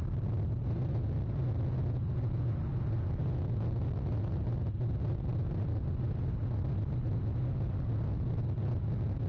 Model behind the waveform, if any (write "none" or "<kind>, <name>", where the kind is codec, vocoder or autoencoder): none